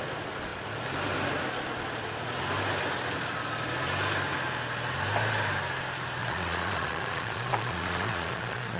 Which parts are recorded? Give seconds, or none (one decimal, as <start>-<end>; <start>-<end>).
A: 0.0-6.2